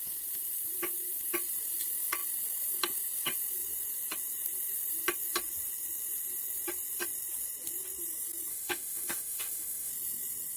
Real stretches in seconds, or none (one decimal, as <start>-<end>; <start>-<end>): 0.0-8.5; 9.9-10.6